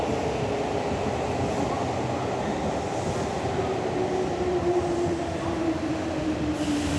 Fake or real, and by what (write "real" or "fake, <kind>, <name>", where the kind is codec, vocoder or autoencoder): real